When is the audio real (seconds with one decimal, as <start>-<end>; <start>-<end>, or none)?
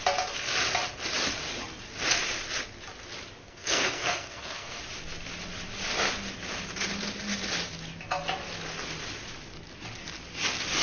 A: 0.0-3.4; 4.8-10.8